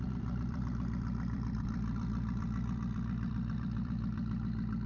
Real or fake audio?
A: fake